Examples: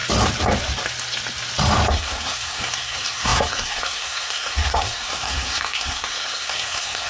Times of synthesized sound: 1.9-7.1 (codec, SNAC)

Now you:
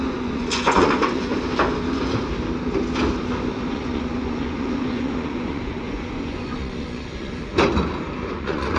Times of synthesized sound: 0.0-1.3 (vocoder, Vocos); 3.7-7.5; 8.3-8.8

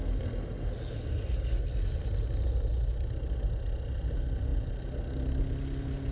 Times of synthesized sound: none

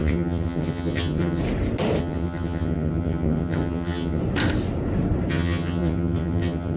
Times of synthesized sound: 0.0-1.4 (vocoder, HiFi-GAN); 2.0-4.2; 5.3-6.8

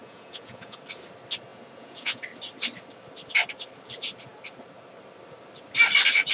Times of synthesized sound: 0.0-0.8 (vocoder, Vocos); 1.5-2.2

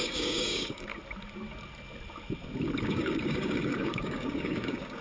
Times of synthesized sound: 0.0-0.9 (codec, DAC); 2.9-5.0